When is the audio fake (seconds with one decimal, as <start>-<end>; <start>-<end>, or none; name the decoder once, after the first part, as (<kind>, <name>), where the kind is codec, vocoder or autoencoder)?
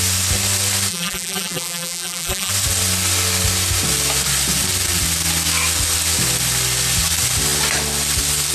0.9-2.5 (vocoder, BigVGAN v2)